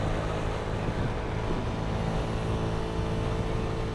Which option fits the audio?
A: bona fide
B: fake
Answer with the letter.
A